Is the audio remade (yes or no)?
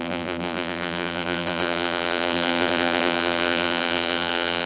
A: yes